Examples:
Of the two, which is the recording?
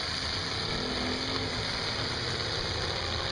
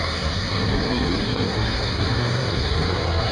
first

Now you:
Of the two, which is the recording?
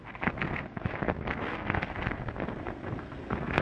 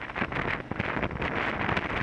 second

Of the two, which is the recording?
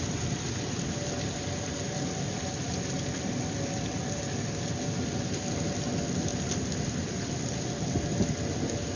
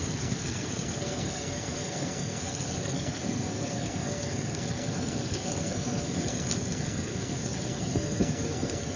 first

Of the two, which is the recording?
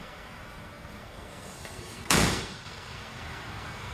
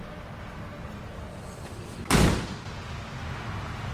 second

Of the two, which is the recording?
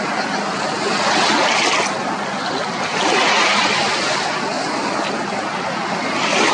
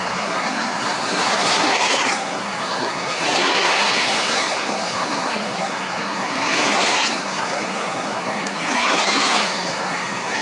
first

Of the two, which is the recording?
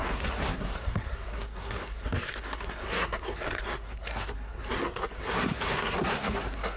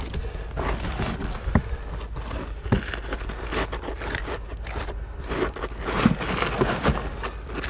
second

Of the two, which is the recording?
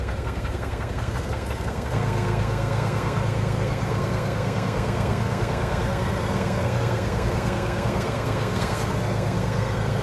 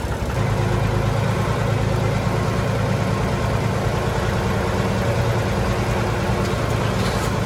second